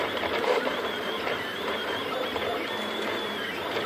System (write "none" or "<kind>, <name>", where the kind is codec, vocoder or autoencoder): vocoder, BigVGAN v2